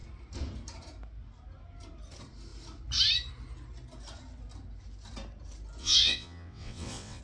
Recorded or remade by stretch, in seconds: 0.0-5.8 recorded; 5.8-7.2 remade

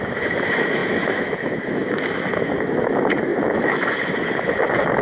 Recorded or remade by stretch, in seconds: 0.0-5.0 remade

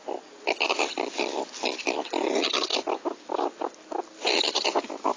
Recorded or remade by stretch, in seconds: 0.0-5.2 recorded

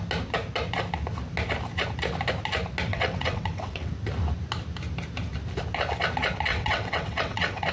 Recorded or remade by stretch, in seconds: 0.0-2.9 recorded; 2.9-3.9 remade; 3.9-6.5 recorded; 6.5-7.7 remade

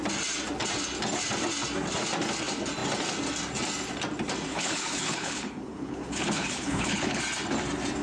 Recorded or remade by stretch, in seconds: 0.0-4.5 recorded; 4.5-7.2 remade; 7.2-8.0 recorded

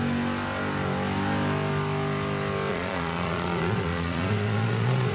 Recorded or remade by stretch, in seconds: 0.0-2.7 recorded; 2.7-5.1 remade